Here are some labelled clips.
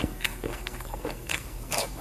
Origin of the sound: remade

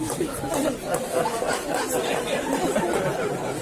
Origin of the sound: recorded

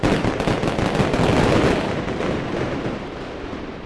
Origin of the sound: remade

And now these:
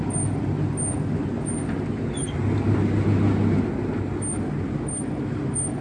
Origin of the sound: recorded